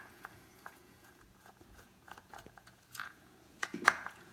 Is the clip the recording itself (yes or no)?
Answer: no